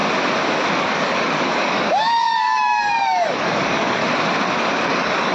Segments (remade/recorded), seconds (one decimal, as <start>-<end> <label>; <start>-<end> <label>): 0.0-0.8 recorded; 0.8-4.0 remade; 4.0-4.7 recorded; 4.7-5.3 remade